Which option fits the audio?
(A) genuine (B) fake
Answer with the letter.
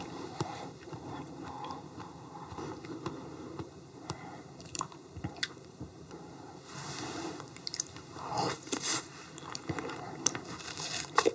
B